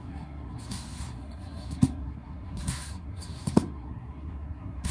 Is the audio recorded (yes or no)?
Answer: no